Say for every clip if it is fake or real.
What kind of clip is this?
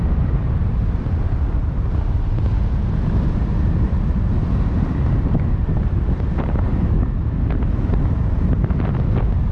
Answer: real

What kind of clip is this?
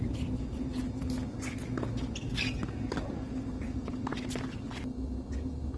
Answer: real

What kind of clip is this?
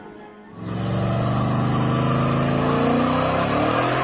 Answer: real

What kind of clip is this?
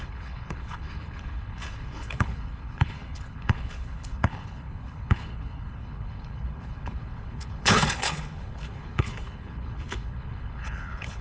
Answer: fake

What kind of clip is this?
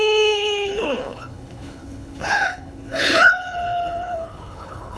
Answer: fake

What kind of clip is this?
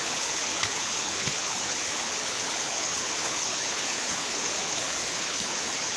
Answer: fake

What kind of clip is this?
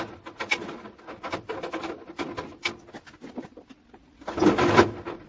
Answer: real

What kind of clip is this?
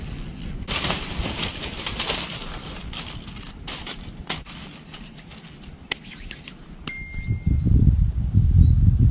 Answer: real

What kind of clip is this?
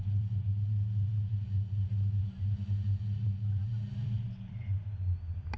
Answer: real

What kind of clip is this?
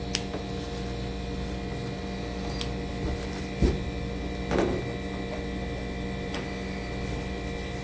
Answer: real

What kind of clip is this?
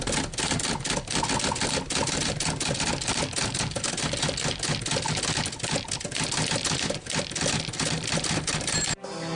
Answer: real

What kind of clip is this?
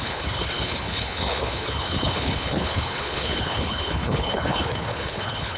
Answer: fake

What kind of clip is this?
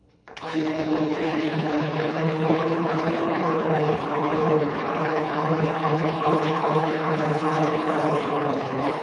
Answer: fake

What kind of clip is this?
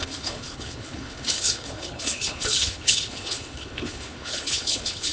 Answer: fake